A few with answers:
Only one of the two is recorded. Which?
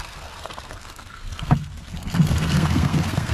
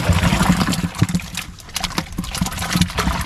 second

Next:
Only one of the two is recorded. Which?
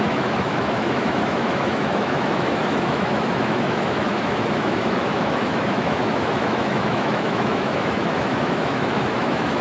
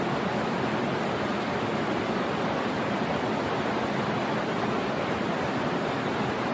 second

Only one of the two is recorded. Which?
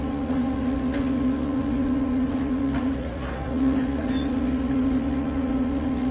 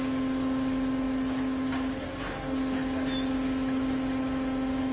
second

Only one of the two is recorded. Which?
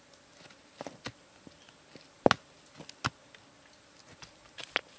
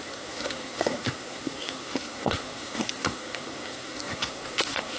first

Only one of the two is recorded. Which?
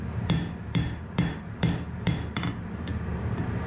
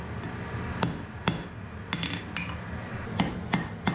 second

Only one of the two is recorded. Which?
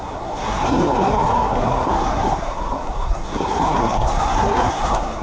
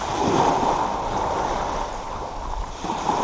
second